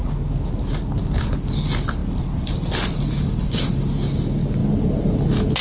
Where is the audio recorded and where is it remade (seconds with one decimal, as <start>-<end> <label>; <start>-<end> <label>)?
0.0-2.0 recorded; 2.0-3.8 remade; 3.8-5.6 recorded